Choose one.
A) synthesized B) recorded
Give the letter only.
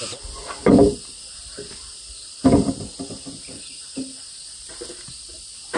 B